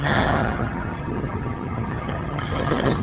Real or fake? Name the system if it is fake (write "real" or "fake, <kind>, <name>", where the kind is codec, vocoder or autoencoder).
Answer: fake, vocoder, HiFi-GAN